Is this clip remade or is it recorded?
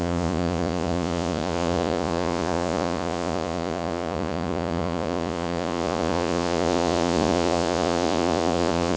remade